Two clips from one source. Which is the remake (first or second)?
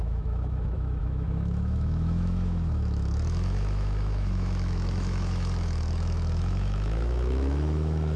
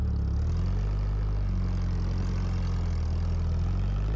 first